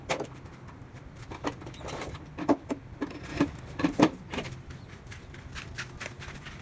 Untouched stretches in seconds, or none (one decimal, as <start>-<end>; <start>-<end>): 0.0-6.6